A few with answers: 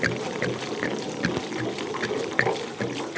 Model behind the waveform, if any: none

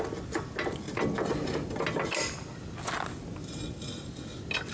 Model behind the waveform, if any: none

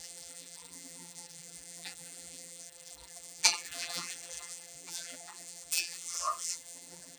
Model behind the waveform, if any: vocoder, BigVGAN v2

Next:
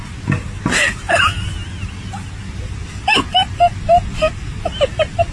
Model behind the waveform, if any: none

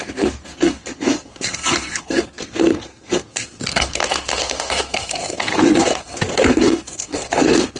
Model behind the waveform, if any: codec, SNAC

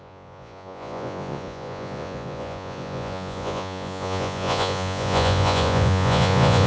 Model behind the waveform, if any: vocoder, Vocos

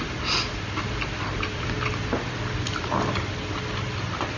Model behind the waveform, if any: none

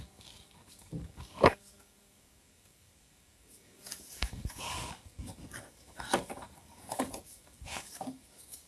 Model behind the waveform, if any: codec, DAC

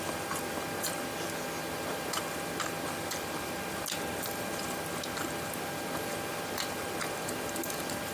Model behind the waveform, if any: none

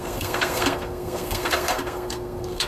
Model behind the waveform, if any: codec, SNAC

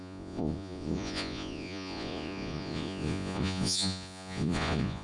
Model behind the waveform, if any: vocoder, Vocos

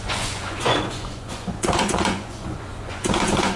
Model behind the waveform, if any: vocoder, Vocos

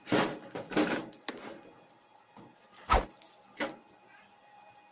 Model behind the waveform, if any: none